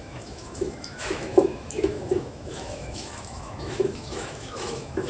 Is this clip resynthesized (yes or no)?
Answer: yes